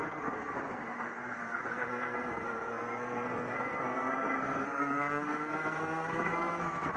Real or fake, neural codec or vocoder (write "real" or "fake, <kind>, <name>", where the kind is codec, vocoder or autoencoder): fake, codec, SNAC